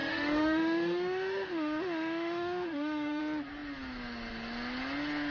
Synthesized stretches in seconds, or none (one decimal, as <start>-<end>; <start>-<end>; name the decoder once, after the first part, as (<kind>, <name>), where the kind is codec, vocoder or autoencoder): 0.0-3.2 (autoencoder, DAC-VAE)